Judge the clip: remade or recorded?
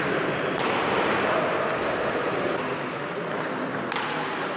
recorded